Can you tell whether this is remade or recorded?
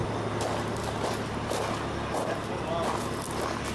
recorded